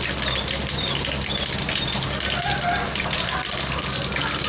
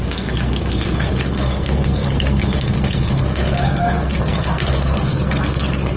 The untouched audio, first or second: first